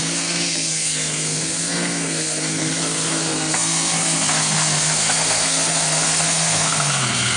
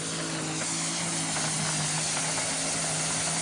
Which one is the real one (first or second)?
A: second